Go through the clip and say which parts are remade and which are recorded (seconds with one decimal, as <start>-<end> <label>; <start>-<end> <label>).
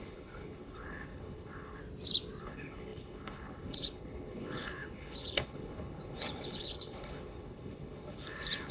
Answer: 0.0-1.8 remade; 1.8-2.4 recorded; 2.4-8.7 remade